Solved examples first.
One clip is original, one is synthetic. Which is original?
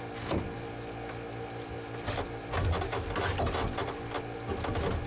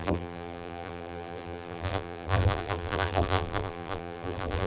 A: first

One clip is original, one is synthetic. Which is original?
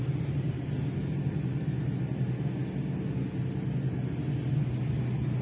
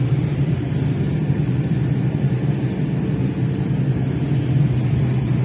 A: first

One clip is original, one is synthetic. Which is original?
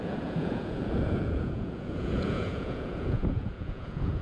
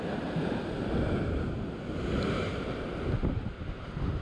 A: second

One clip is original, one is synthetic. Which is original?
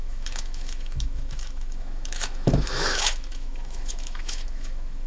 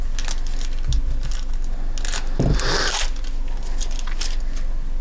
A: second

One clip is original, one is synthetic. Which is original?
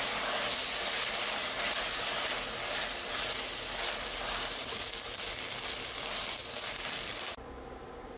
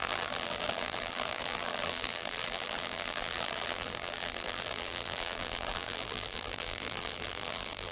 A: first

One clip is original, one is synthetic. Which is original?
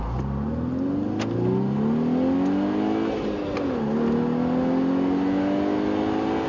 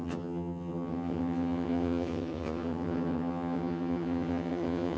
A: first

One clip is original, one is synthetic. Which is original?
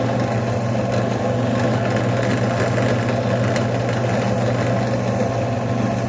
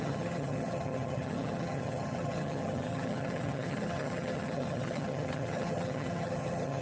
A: first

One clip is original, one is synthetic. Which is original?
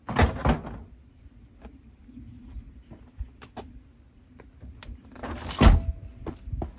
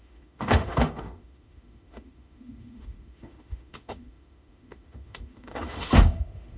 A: first